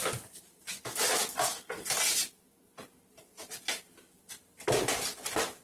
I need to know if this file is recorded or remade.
recorded